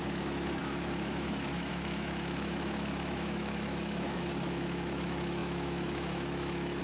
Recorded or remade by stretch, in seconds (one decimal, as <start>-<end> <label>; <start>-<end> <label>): 0.0-6.8 remade